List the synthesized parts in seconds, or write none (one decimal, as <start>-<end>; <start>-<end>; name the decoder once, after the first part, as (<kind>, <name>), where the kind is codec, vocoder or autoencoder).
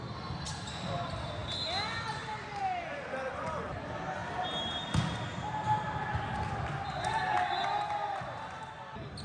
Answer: none